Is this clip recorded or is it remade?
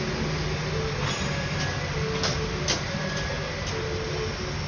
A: recorded